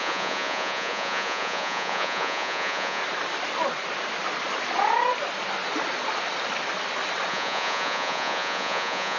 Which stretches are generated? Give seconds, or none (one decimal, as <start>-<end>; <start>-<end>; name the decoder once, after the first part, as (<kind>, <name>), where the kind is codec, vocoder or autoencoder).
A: 0.0-3.0 (vocoder, Vocos); 7.3-9.2